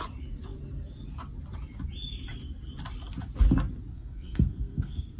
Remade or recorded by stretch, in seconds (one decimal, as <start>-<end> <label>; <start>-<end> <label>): 0.0-3.9 recorded; 3.9-5.2 remade